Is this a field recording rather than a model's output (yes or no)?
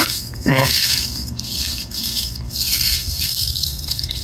no